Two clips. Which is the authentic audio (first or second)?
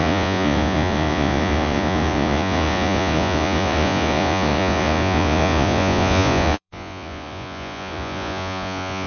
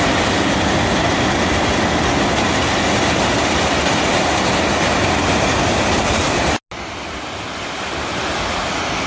second